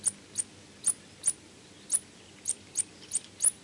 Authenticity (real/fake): real